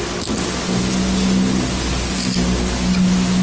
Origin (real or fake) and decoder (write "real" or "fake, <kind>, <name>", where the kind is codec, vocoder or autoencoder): real